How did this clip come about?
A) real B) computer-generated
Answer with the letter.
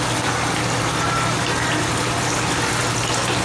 A